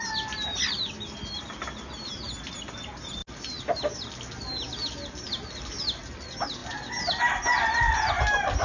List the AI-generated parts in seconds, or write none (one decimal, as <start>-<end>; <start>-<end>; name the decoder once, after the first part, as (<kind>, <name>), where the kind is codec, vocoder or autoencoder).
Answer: none